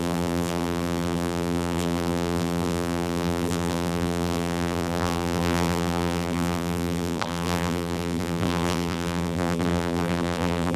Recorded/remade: remade